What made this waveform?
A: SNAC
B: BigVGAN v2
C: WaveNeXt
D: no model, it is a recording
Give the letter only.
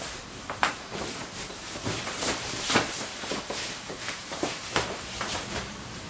B